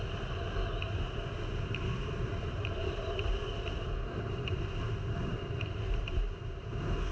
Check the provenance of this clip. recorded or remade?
recorded